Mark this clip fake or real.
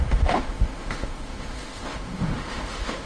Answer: fake